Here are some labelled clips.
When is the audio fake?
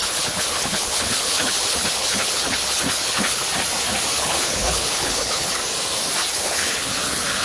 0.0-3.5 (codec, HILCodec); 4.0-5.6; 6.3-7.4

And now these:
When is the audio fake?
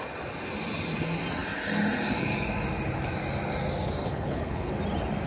4.0-4.7 (codec, HILCodec)